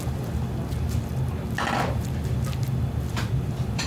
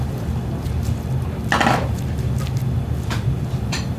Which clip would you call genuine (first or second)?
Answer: first